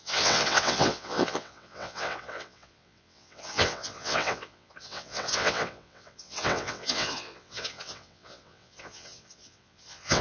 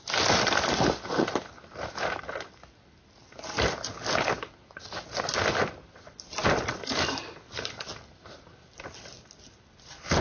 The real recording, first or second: second